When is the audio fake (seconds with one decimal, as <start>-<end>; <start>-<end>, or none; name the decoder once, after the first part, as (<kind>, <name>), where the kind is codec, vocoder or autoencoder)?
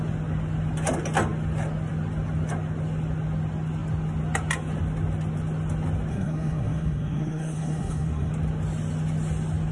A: 6.1-8.3 (codec, SNAC)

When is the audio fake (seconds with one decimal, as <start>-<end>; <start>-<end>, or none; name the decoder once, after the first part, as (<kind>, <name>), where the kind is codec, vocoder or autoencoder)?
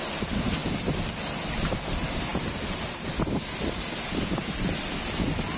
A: none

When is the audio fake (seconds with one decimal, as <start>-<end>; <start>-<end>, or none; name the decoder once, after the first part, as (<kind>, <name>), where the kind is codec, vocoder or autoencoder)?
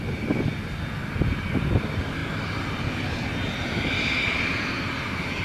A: none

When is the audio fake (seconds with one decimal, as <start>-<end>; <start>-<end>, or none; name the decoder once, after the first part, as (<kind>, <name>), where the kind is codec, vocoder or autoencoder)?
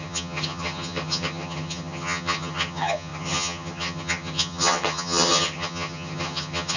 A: 0.0-6.8 (vocoder, HiFi-GAN)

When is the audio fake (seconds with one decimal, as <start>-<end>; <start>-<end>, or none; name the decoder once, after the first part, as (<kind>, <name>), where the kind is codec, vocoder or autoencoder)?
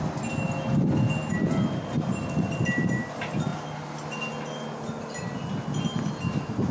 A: none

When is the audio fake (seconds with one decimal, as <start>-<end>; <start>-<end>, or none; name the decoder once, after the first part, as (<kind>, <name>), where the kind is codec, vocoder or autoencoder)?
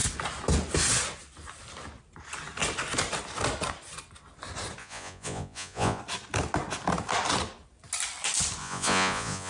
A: 4.8-6.0 (vocoder, Vocos); 8.6-9.5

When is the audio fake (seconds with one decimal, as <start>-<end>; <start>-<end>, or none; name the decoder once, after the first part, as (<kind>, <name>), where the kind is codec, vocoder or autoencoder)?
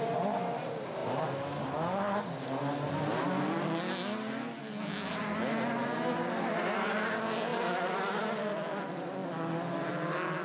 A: none